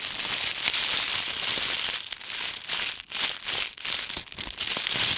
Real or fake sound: real